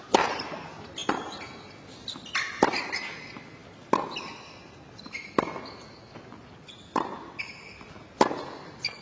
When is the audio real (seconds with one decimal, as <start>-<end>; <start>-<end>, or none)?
0.0-9.0